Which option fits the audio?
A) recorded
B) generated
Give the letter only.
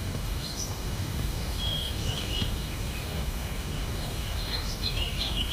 B